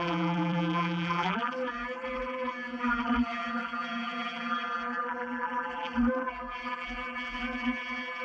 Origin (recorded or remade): remade